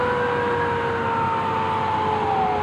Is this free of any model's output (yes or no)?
yes